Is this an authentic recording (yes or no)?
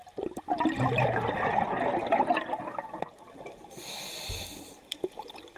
yes